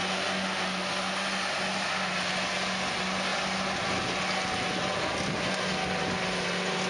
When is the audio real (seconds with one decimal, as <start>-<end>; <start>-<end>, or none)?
0.0-6.9